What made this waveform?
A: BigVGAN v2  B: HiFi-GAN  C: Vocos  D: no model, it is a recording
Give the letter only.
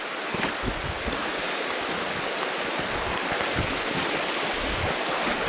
D